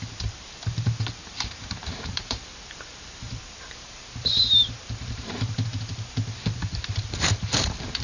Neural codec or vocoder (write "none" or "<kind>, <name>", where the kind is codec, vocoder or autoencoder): vocoder, BigVGAN v2